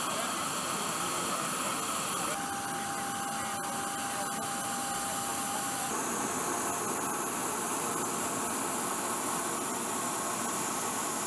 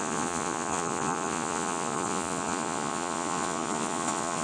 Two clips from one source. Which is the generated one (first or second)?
second